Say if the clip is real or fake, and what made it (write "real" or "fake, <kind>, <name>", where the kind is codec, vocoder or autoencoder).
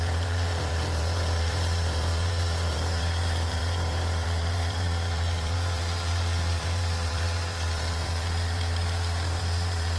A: fake, vocoder, BigVGAN v2